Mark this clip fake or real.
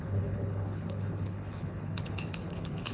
fake